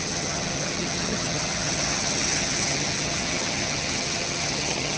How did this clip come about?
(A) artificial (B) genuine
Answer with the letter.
A